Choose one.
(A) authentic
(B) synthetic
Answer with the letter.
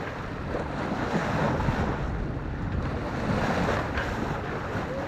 A